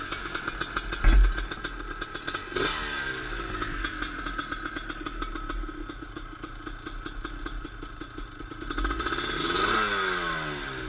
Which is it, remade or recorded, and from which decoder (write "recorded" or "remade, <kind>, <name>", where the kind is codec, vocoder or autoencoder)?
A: recorded